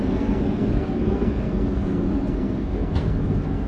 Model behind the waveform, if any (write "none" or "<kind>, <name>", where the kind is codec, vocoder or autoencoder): codec, SNAC